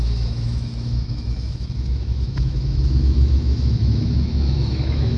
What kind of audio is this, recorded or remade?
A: remade